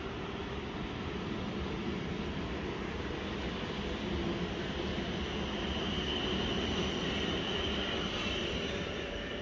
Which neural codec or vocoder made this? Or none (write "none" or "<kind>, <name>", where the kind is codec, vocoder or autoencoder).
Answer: none